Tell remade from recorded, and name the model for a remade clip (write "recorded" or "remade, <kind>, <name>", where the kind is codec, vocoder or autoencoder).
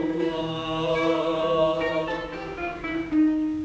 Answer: remade, codec, DAC